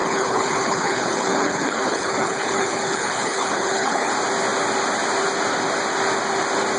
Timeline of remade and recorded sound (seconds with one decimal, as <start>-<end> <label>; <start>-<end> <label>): 0.0-4.1 remade; 4.1-6.8 recorded